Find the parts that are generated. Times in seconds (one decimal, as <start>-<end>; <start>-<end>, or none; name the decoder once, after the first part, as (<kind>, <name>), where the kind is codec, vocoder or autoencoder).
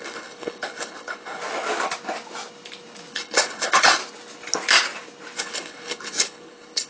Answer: 0.0-1.4 (codec, HILCodec); 3.1-4.0; 5.4-6.9